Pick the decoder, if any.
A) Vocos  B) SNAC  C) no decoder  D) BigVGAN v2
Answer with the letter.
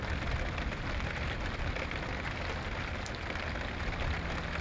C